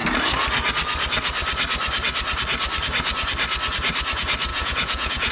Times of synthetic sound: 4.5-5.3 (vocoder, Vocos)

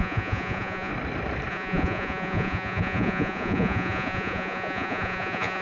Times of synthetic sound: 0.0-0.9 (vocoder, Vocos); 1.5-5.6

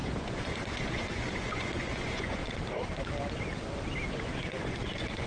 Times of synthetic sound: 0.0-2.4 (vocoder, Vocos); 4.1-5.3

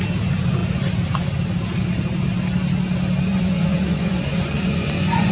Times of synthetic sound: 3.3-5.3 (vocoder, Vocos)